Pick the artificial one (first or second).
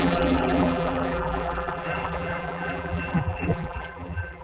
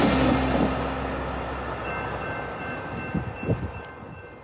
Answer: first